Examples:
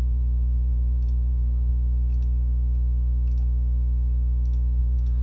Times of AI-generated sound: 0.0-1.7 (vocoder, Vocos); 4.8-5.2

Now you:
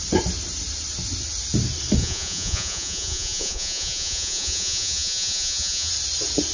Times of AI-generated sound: 2.0-5.9 (vocoder, Vocos)

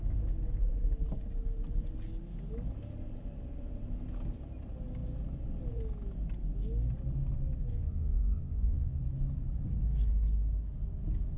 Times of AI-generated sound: 7.7-9.0 (vocoder, Vocos)

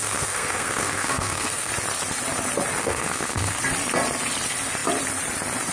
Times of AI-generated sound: 0.0-1.7 (codec, SNAC); 2.8-3.6

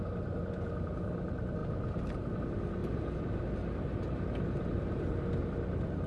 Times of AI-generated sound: 2.8-3.4 (vocoder, BigVGAN v2); 4.6-5.1

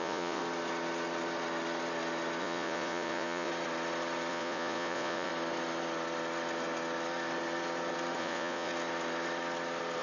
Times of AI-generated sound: 0.0-0.4 (vocoder, Vocos); 2.4-3.5; 4.3-5.3; 8.2-8.7

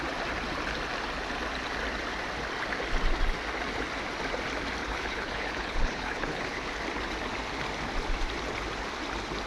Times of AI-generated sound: 4.8-6.7 (codec, HILCodec)

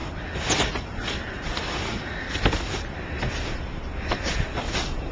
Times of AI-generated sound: none